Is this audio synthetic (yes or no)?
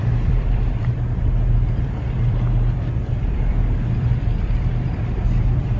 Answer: yes